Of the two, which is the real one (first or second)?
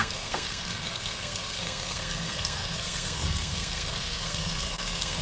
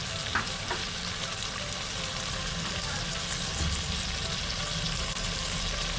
second